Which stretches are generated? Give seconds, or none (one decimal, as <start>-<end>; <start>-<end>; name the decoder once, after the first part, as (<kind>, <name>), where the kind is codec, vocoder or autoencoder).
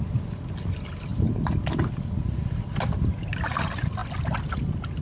none